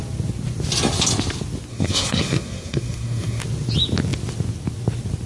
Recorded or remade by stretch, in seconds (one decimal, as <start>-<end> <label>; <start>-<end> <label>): 0.0-1.7 recorded; 1.7-3.4 remade; 3.4-5.3 recorded